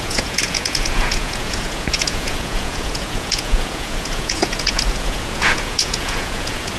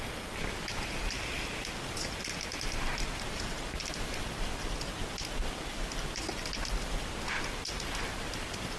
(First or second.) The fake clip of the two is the first